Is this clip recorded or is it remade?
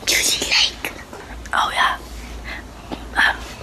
recorded